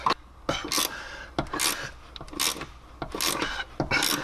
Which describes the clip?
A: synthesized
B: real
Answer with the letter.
B